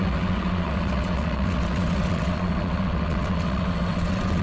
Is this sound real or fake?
fake